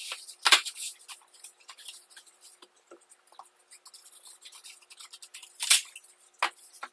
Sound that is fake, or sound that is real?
real